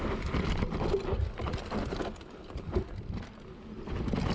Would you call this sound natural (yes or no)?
yes